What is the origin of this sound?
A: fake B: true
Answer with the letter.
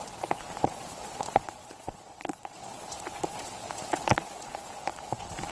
A